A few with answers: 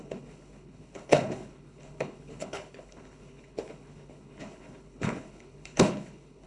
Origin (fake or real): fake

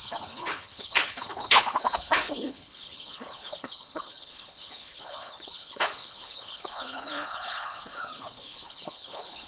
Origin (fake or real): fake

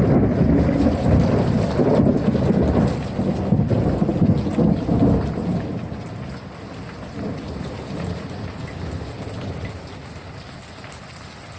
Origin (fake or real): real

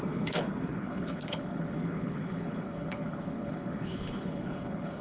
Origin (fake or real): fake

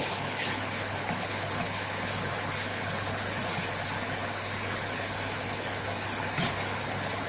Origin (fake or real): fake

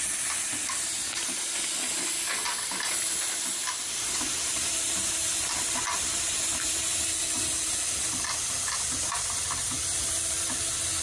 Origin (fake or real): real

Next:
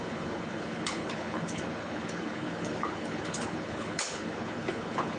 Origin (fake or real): fake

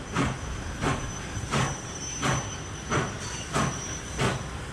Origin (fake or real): real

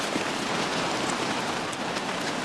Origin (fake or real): real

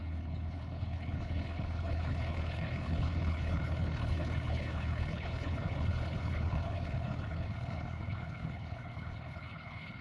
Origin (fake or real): fake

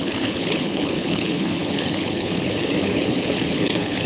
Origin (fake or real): fake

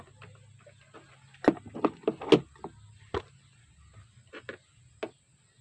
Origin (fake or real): real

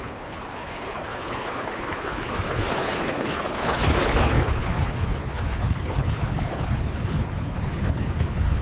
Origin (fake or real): fake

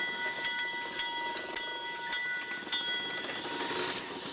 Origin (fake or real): real